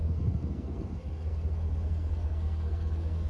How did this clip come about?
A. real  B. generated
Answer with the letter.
B